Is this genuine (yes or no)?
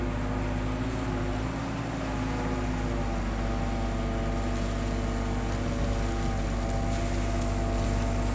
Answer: yes